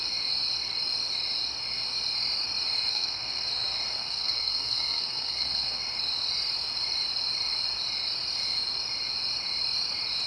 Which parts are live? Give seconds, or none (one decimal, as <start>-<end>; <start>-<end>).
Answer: 0.0-2.9; 3.5-4.0; 5.8-10.3